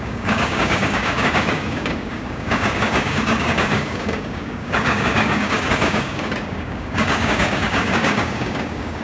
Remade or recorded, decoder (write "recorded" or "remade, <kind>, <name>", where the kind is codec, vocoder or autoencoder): remade, codec, DAC